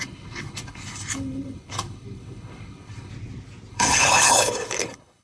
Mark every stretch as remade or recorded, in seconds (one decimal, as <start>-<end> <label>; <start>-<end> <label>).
0.0-3.1 remade; 3.1-3.7 recorded; 3.7-5.2 remade